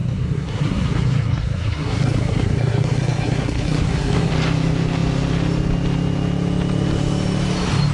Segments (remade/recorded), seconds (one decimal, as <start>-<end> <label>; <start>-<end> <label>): 0.0-4.3 remade; 4.3-7.9 recorded